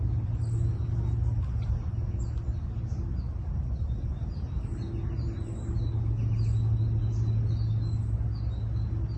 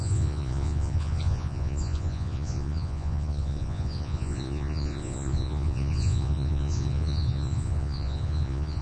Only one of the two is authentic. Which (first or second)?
first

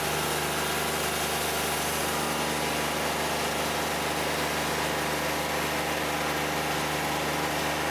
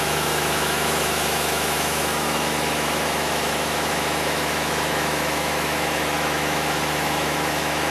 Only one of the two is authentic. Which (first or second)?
first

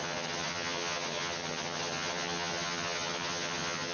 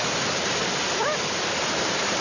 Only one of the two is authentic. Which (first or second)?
second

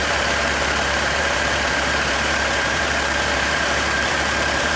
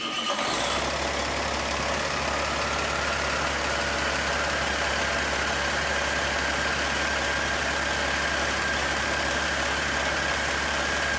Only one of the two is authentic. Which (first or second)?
second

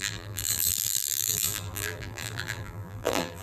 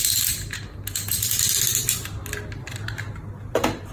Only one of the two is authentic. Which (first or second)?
second